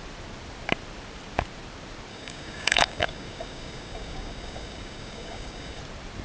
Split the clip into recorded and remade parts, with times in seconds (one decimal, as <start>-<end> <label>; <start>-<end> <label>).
0.0-2.1 recorded; 2.1-5.8 remade; 5.8-6.2 recorded